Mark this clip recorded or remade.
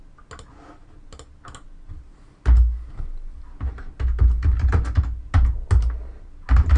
recorded